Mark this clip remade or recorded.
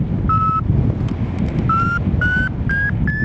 recorded